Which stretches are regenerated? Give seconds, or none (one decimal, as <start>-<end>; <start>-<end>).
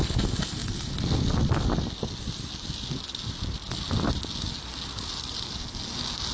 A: none